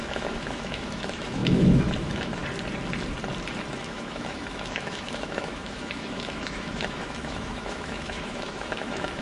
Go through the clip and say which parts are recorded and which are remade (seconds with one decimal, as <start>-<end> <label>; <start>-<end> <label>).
0.0-2.4 remade; 2.4-3.7 recorded; 3.7-9.2 remade